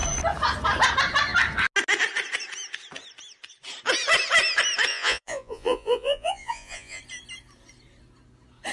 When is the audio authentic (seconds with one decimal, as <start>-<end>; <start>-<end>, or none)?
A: 0.0-4.9; 7.0-8.7